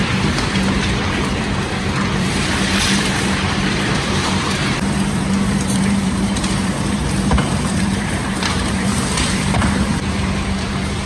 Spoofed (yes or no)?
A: yes